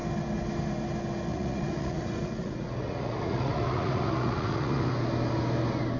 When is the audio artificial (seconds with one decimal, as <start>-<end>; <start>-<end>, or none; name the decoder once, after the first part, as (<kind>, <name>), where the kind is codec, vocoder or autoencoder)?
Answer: 1.3-4.9 (vocoder, Vocos)